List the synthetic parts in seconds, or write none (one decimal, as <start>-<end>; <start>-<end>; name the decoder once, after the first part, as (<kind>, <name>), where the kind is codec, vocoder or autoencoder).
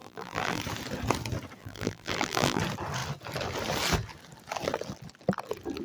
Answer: 0.0-0.6 (vocoder, BigVGAN v2); 1.6-2.6